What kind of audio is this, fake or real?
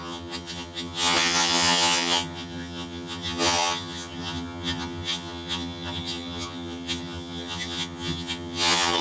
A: fake